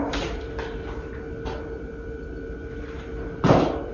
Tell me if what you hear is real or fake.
real